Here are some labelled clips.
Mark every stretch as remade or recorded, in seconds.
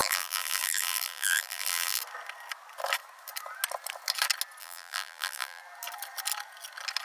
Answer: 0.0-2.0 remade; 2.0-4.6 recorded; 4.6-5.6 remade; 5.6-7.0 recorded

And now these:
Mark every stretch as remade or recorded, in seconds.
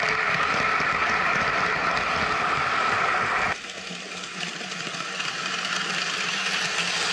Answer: 0.0-7.1 recorded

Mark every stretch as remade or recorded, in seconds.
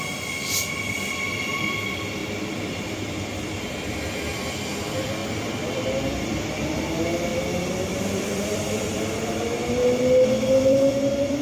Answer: 0.0-2.2 remade; 2.2-2.7 recorded; 2.7-7.3 remade; 7.3-8.0 recorded; 8.0-9.8 remade; 9.8-10.5 recorded; 10.5-11.4 remade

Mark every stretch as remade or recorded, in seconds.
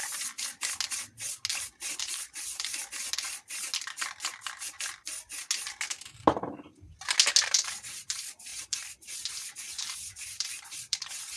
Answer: 0.0-2.0 recorded; 2.0-2.8 remade; 2.8-7.4 recorded; 7.4-11.4 remade